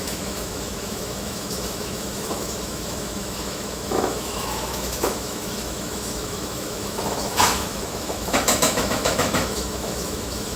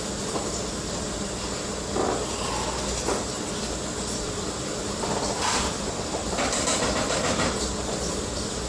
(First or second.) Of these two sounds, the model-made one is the first